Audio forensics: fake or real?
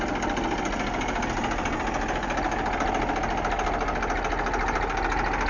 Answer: real